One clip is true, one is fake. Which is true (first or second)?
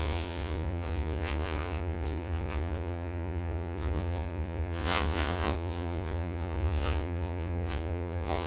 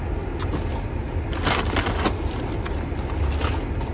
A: second